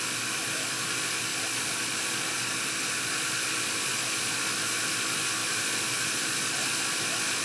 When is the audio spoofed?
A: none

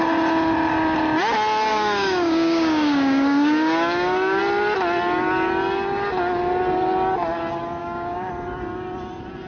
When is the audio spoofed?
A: 1.7-4.4 (codec, DAC); 7.8-8.3

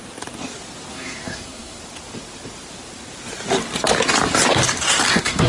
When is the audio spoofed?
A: 0.9-1.8 (codec, SNAC); 5.1-5.5

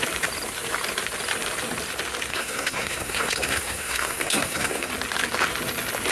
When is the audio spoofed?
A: 2.3-4.9 (codec, SNAC)